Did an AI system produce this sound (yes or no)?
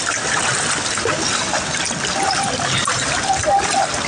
no